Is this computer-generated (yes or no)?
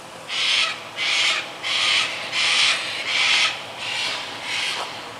yes